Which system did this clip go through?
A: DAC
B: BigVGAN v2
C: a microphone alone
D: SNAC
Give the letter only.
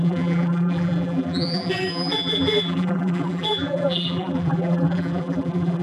B